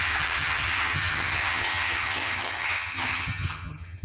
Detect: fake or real fake